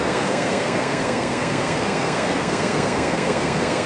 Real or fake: fake